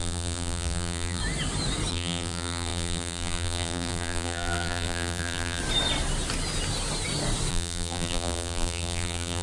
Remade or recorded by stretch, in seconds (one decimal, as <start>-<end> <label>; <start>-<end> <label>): 0.0-1.2 remade; 1.2-1.9 recorded; 1.9-5.6 remade; 5.6-7.5 recorded; 7.5-9.4 remade